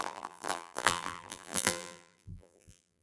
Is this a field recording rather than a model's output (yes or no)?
no